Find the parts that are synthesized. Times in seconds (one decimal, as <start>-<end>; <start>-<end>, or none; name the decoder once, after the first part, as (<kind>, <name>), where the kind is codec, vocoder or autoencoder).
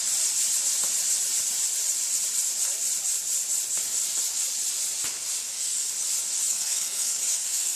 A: 5.4-5.9 (codec, SNAC); 6.5-7.8